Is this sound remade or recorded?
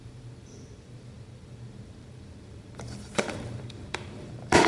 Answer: remade